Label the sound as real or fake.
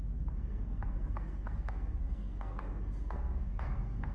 fake